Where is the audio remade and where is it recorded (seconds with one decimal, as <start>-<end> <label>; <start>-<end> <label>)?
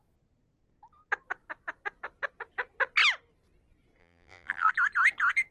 0.0-4.0 recorded; 4.0-4.7 remade; 4.7-5.5 recorded